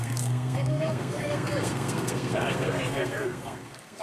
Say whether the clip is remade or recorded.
remade